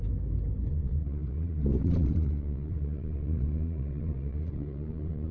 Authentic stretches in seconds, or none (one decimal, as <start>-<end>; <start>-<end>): 0.0-0.7